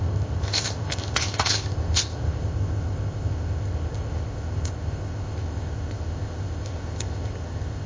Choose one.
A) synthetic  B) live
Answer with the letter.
A